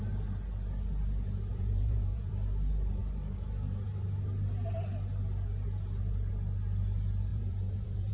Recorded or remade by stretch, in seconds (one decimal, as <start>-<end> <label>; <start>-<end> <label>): 0.0-1.5 recorded; 1.5-2.3 remade; 2.3-7.3 recorded; 7.3-8.1 remade